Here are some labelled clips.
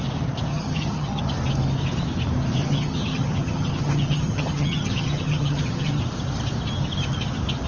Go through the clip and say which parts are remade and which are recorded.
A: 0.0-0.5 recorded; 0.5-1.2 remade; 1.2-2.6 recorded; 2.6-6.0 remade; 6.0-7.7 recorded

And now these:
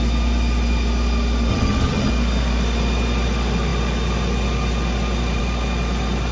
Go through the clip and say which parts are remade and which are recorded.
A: 0.0-1.5 recorded; 1.5-2.1 remade; 2.1-6.3 recorded

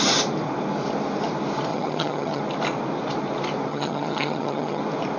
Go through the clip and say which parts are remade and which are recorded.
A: 0.0-1.7 recorded; 1.7-2.4 remade; 2.4-3.7 recorded; 3.7-4.8 remade; 4.8-5.2 recorded

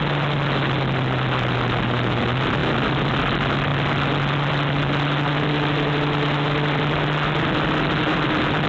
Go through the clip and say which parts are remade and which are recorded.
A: 0.0-8.7 recorded